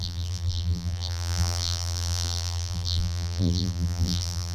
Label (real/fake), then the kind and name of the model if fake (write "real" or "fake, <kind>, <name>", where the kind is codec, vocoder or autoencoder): fake, vocoder, BigVGAN v2